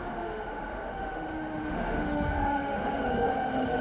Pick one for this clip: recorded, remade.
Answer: remade